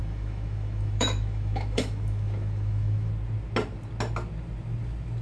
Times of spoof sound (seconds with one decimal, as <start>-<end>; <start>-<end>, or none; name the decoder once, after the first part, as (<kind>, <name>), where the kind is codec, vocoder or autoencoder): 0.0-3.1 (autoencoder, DAC-VAE)